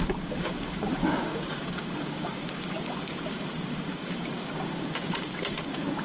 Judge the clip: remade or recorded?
remade